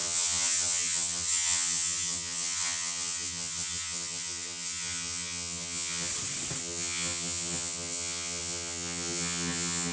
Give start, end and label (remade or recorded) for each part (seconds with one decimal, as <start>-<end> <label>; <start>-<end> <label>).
0.0-6.1 remade; 6.1-6.6 recorded; 6.6-9.9 remade